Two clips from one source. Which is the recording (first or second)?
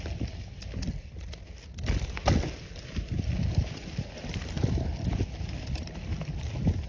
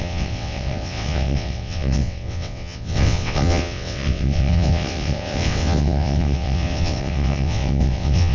first